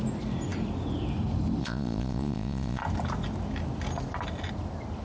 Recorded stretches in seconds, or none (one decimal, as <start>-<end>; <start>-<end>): 0.0-1.6; 2.8-5.0